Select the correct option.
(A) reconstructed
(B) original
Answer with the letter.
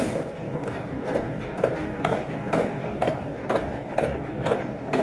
A